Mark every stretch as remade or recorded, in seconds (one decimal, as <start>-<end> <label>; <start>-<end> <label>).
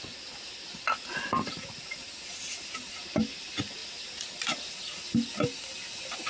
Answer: 0.0-6.3 recorded